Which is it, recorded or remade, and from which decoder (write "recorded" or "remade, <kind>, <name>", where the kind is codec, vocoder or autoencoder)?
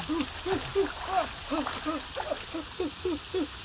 recorded